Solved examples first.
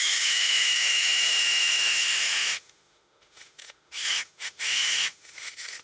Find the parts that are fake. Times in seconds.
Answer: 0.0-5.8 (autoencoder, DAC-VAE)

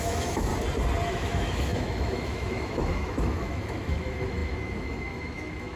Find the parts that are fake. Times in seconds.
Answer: 0.0-0.5 (autoencoder, DAC-VAE); 1.1-5.8

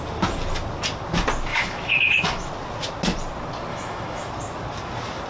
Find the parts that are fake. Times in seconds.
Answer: 1.5-2.5 (autoencoder, DAC-VAE); 3.7-4.3

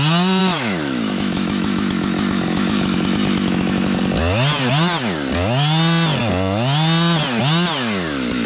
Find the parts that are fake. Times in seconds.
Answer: 0.4-4.0 (autoencoder, DAC-VAE)

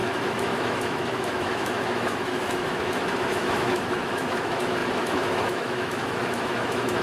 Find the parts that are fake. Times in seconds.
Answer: 0.0-7.0 (autoencoder, DAC-VAE)